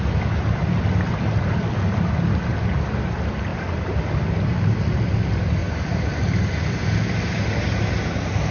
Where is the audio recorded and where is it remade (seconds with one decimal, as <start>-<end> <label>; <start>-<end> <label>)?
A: 0.0-3.5 recorded; 3.5-4.8 remade; 4.8-8.5 recorded